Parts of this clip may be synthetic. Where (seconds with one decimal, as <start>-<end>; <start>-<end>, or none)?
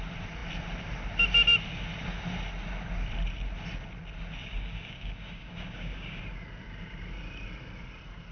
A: 4.4-6.2